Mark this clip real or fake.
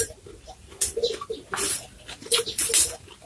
real